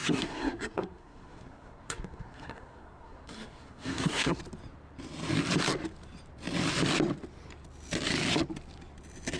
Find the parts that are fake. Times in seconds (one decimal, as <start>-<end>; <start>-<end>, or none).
0.0-4.4